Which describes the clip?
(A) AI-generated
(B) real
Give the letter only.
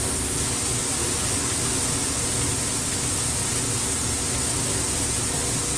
B